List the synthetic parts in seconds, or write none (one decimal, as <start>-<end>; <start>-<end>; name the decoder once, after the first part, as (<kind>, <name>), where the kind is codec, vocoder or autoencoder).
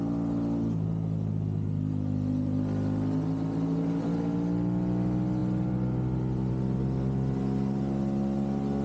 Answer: none